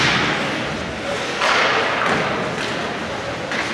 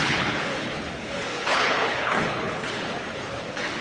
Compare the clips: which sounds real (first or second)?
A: first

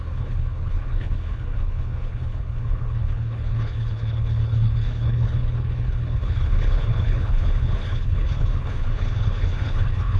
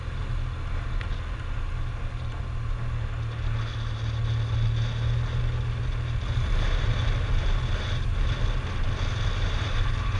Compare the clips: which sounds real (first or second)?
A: second